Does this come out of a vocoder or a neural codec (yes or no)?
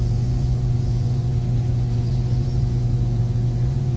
yes